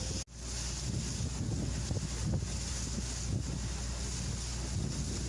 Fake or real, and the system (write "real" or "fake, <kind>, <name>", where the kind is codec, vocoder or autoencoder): real